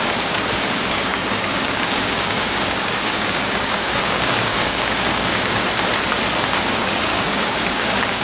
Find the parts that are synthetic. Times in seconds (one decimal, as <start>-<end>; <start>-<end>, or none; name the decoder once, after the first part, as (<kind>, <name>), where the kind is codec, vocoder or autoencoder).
0.0-5.6 (codec, DAC); 6.4-8.2